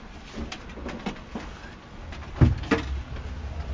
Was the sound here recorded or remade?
recorded